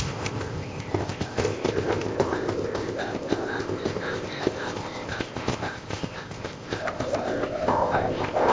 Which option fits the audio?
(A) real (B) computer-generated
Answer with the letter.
B